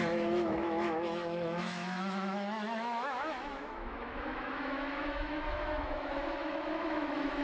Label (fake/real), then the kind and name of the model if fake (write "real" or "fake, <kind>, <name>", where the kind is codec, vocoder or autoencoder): fake, autoencoder, DAC-VAE